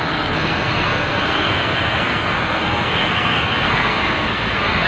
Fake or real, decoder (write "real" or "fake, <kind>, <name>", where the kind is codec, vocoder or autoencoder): fake, codec, SNAC